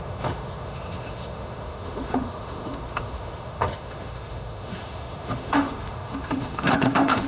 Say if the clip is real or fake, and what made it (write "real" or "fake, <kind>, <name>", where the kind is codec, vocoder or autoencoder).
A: fake, autoencoder, DAC-VAE